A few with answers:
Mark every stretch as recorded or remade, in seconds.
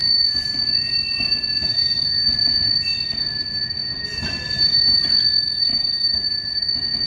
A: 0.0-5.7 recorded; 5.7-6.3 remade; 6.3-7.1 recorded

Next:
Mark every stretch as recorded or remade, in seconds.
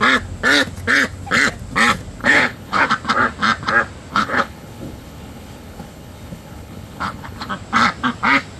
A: 0.0-2.2 recorded; 2.2-2.8 remade; 2.8-4.1 recorded; 4.1-7.5 remade; 7.5-8.6 recorded